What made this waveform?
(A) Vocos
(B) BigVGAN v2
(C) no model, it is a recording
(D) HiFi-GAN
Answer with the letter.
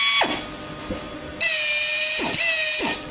C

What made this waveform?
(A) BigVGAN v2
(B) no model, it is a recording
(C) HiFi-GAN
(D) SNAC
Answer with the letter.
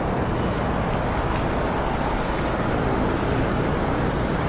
B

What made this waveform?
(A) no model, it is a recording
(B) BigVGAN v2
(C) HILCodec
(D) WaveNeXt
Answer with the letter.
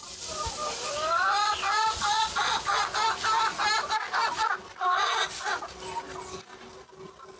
A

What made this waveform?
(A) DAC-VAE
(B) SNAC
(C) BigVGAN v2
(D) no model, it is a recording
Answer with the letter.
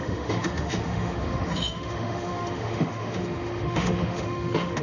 A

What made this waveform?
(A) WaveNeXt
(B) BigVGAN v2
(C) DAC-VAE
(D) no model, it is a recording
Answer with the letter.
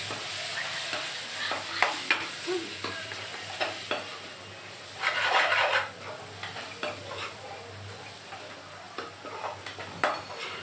D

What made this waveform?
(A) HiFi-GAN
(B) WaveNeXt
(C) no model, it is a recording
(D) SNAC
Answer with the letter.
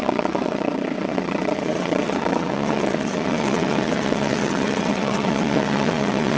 B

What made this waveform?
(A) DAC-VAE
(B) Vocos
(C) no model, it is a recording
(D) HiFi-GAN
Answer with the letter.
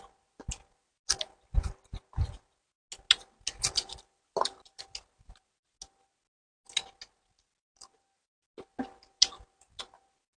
C